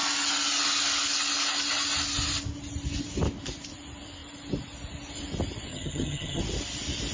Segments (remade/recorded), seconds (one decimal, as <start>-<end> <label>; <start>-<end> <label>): 0.0-5.7 recorded; 5.7-6.4 remade; 6.4-7.1 recorded